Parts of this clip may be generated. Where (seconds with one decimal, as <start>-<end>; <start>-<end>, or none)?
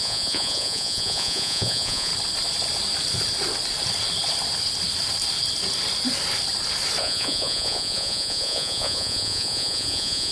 0.0-2.1; 7.0-10.3